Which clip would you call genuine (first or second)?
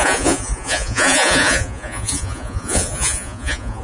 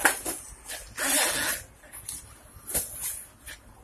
second